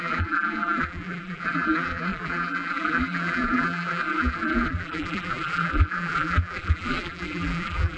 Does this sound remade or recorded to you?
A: remade